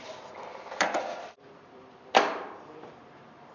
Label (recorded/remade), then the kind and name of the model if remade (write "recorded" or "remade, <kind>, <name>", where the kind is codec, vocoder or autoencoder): remade, vocoder, BigVGAN v2